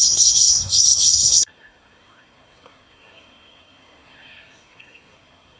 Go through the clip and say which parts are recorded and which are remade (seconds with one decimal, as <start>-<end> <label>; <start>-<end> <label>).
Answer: 0.0-5.6 remade